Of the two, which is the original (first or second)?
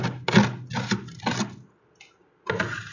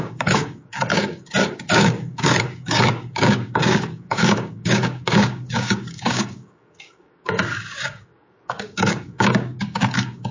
first